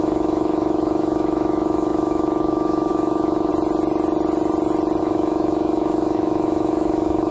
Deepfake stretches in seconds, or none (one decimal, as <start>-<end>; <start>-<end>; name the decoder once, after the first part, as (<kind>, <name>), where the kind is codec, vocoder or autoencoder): 0.0-3.5 (autoencoder, DAC-VAE); 5.0-7.3